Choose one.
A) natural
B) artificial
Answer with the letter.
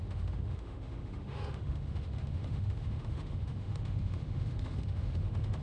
B